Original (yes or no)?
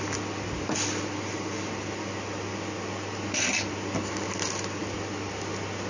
yes